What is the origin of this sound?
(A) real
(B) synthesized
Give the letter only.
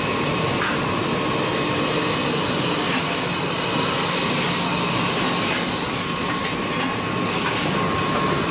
A